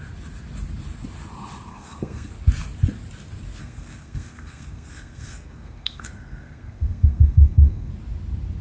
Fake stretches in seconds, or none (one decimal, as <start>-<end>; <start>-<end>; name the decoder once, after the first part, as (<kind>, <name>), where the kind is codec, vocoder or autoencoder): 1.7-2.3 (codec, SNAC); 3.6-7.9